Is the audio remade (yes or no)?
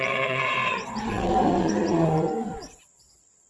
yes